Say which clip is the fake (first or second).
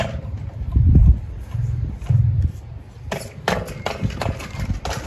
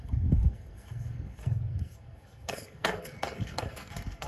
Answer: second